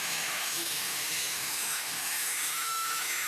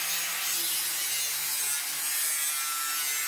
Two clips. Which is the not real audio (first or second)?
first